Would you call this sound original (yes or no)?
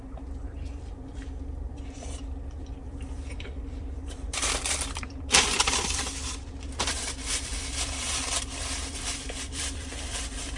no